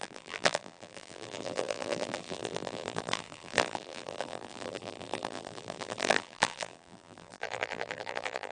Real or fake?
fake